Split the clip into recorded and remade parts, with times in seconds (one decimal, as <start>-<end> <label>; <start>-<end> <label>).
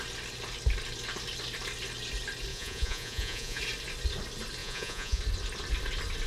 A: 0.0-2.5 recorded; 2.5-3.6 remade; 3.6-4.6 recorded; 4.6-5.2 remade; 5.2-6.3 recorded